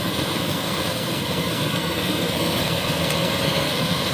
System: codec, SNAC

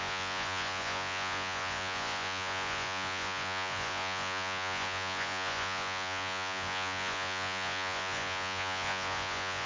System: vocoder, Vocos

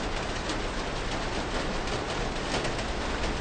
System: none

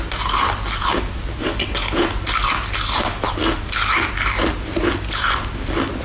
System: none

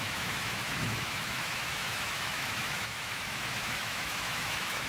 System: autoencoder, DAC-VAE